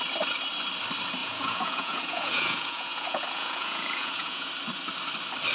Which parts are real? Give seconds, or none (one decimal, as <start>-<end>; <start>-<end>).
0.0-1.2; 4.5-5.5

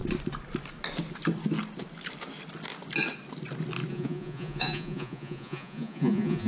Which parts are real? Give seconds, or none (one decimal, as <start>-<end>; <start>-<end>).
0.0-3.9

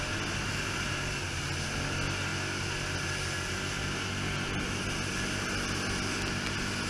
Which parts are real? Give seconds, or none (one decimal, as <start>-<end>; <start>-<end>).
0.0-6.9

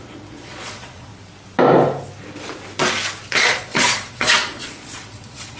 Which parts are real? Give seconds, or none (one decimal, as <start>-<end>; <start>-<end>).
1.1-3.3

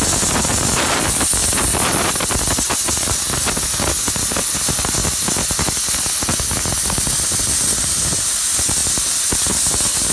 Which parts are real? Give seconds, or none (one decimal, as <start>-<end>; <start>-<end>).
0.0-10.1